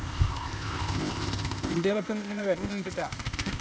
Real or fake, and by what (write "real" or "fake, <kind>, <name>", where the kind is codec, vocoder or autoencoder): fake, codec, ZipCodec